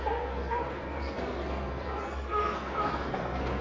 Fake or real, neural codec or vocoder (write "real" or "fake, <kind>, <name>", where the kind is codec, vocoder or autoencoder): fake, codec, SNAC